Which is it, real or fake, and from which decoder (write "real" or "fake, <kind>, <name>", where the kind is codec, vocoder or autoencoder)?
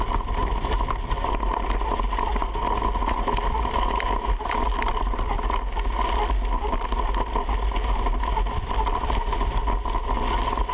real